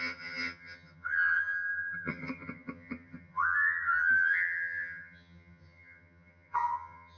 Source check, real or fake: fake